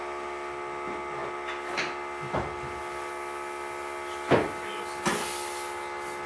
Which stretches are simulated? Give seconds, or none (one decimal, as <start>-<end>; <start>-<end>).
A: none